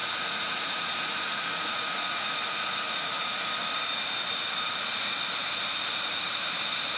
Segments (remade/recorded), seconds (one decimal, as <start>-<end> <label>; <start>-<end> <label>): 0.0-3.5 remade; 3.5-7.0 recorded